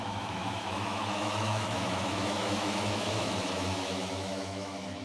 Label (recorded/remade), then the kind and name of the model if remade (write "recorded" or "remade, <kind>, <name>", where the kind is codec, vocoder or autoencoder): remade, autoencoder, DAC-VAE